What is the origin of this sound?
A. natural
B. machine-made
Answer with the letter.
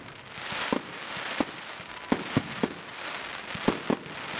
A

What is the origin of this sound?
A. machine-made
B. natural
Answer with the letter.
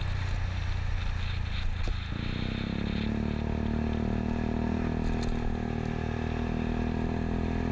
B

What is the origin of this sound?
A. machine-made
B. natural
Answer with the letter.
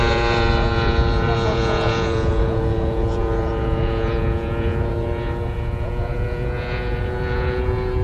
A